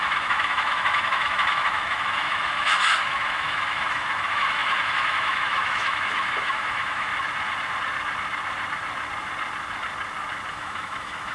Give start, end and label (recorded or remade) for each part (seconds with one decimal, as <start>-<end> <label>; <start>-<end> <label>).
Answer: 0.0-7.1 remade; 7.1-10.5 recorded; 10.5-11.3 remade